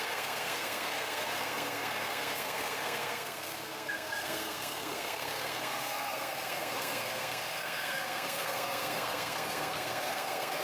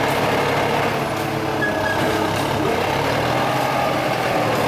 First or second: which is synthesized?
first